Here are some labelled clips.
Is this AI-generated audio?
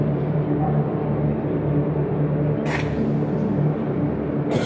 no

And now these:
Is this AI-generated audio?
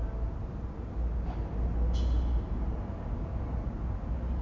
no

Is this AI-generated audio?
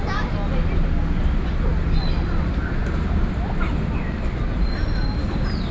no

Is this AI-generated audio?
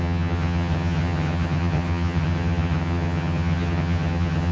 yes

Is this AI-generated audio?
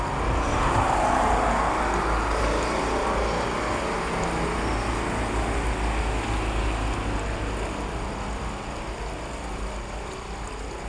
no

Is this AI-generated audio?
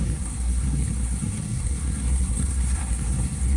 yes